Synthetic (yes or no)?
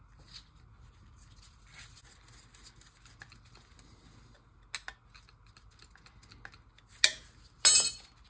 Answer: no